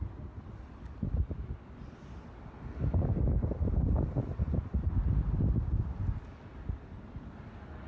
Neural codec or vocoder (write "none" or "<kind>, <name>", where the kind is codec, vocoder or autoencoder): none